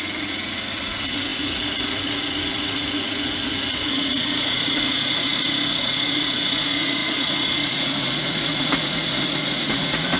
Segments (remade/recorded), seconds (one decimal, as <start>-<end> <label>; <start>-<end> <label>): 0.0-10.2 remade

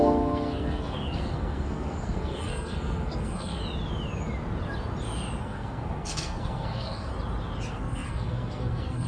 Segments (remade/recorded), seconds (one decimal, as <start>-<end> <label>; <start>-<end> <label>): 0.0-3.6 remade; 3.6-5.4 recorded; 5.4-7.1 remade; 7.1-7.7 recorded; 7.7-9.1 remade

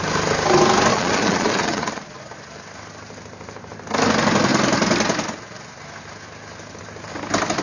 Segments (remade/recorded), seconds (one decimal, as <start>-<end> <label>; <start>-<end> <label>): 0.0-0.9 recorded; 0.9-2.2 remade; 2.2-7.6 recorded

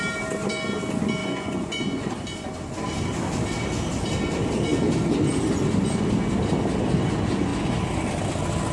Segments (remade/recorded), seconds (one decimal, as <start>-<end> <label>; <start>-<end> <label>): 0.0-1.2 recorded; 1.2-2.1 remade; 2.1-8.7 recorded

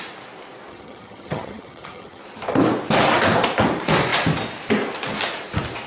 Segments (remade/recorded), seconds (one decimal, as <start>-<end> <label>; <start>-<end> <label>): 0.0-0.7 recorded; 0.7-2.2 remade; 2.2-5.9 recorded